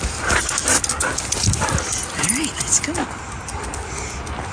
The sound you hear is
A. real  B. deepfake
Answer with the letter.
B